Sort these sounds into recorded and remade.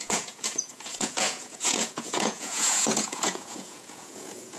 remade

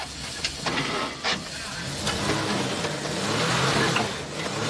recorded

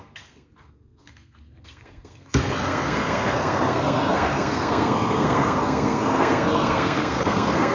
remade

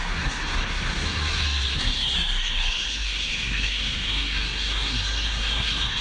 remade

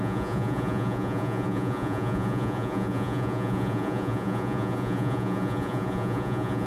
remade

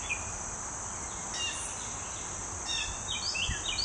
recorded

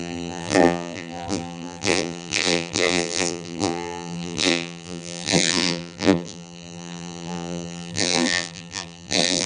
remade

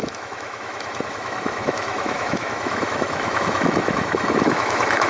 remade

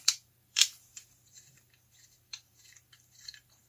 remade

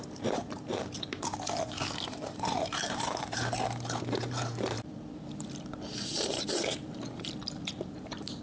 remade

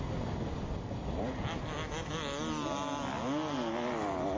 recorded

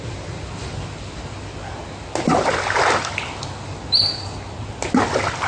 recorded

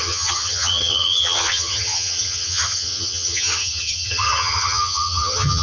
remade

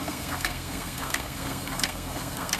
remade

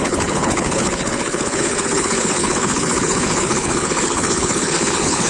remade